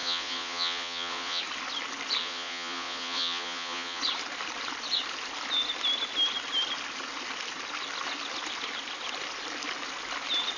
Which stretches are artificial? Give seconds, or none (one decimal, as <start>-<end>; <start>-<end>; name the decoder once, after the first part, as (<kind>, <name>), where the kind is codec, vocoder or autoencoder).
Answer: 0.0-1.4 (vocoder, Vocos); 2.2-4.0